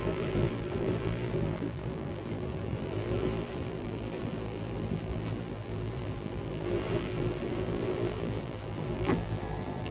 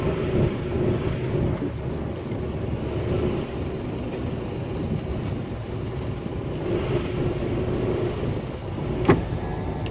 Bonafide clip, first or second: second